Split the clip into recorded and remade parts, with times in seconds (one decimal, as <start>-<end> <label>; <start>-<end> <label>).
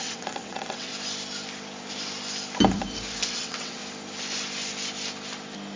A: 0.0-0.9 remade; 0.9-3.3 recorded; 3.3-3.8 remade; 3.8-5.8 recorded